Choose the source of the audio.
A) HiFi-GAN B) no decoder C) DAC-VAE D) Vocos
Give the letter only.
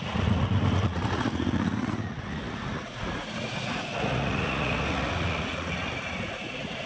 D